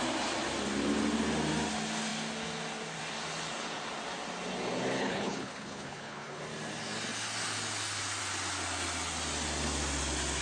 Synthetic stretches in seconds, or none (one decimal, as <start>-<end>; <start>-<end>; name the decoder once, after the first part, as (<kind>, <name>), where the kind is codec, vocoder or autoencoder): 5.0-6.4 (codec, HILCodec)